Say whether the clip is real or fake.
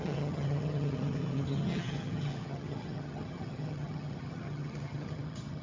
fake